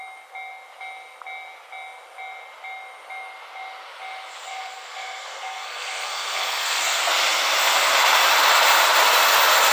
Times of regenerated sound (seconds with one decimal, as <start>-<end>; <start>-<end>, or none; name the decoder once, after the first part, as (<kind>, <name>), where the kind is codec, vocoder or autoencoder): 4.5-7.0 (codec, SNAC)